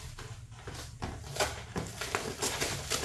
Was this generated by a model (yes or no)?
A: no